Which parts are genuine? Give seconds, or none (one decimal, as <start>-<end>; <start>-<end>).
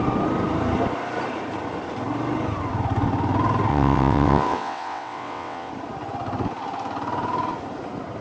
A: 0.0-3.7; 5.7-8.2